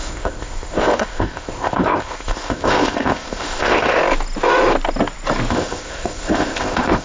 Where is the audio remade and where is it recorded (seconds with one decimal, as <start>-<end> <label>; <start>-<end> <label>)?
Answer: 0.0-4.0 remade; 4.0-5.5 recorded; 5.5-7.0 remade